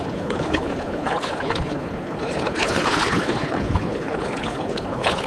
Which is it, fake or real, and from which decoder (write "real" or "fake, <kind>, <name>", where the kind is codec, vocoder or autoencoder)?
fake, codec, HILCodec